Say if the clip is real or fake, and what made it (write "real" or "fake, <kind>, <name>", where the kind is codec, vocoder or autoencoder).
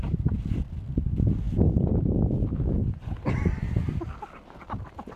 real